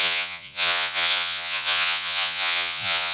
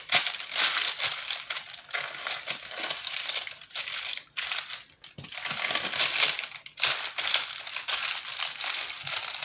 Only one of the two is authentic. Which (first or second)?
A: second